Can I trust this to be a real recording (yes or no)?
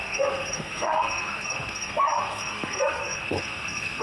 no